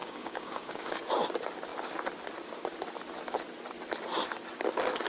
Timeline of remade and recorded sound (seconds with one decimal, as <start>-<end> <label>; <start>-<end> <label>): 0.0-1.0 remade; 1.0-5.1 recorded